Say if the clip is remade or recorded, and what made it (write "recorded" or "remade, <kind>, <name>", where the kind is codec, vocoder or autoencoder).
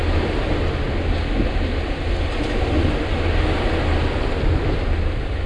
recorded